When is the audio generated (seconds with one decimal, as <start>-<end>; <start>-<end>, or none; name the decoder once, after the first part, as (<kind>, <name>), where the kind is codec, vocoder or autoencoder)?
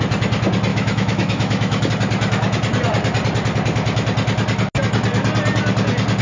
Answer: 0.7-1.9 (autoencoder, DAC-VAE)